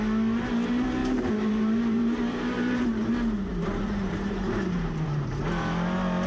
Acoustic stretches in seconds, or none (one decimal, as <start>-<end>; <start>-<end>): 0.0-1.0; 2.8-3.5; 5.4-6.3